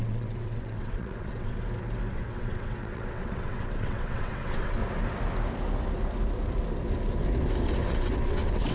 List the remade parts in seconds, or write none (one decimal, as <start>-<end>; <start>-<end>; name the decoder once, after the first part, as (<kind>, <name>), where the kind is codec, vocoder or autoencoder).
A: 0.0-1.6 (vocoder, WaveNeXt); 2.1-4.8; 7.9-8.7